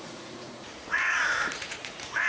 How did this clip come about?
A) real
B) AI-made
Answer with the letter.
B